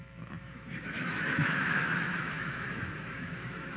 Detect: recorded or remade remade